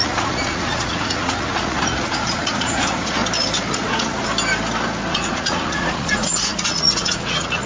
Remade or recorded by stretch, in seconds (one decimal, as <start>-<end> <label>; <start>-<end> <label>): 0.0-3.2 remade; 3.2-3.7 recorded; 3.7-4.3 remade; 4.3-5.1 recorded; 5.1-7.7 remade